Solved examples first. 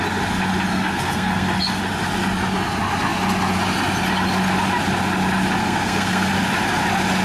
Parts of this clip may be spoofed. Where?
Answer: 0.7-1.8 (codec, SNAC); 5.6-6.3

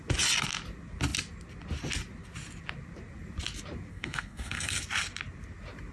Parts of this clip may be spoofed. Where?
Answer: 3.9-4.8 (codec, SNAC)

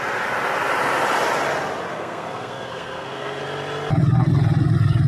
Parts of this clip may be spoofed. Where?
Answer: 1.9-3.4 (codec, SNAC)

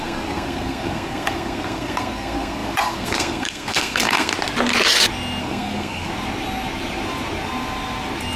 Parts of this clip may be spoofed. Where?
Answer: 0.0-4.3 (codec, SNAC); 5.4-6.1

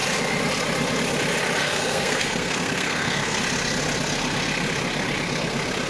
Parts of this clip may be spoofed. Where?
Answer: 1.6-3.4 (codec, SNAC)